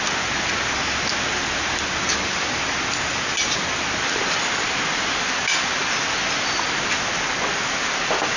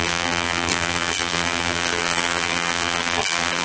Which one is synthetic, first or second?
second